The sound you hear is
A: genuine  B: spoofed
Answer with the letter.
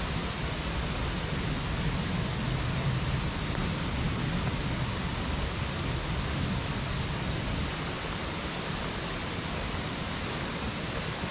A